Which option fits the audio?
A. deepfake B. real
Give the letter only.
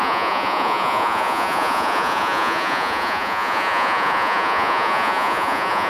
A